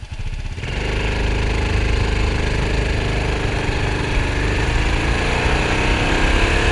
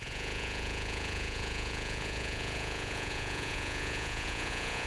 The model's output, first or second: second